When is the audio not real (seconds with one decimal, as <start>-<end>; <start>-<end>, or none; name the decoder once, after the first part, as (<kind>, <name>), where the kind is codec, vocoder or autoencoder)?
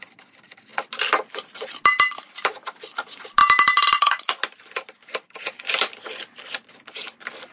none